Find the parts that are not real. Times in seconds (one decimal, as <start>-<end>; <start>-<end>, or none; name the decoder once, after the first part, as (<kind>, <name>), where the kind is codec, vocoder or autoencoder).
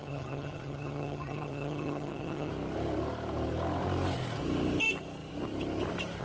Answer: 0.0-2.5 (vocoder, HiFi-GAN)